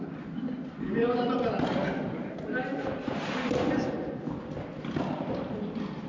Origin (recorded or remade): recorded